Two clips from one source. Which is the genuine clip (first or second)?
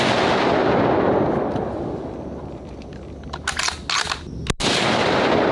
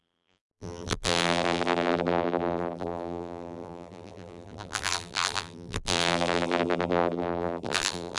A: first